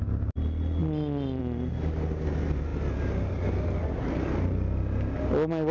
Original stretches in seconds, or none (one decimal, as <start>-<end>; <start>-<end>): 0.0-5.7

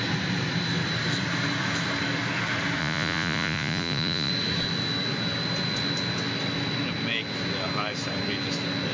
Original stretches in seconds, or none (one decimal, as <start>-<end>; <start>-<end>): 0.0-2.8; 4.3-8.9

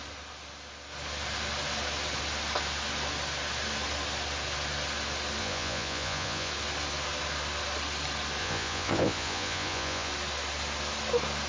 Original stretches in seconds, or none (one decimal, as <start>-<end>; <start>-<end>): 0.0-5.4; 6.5-8.4; 10.1-11.5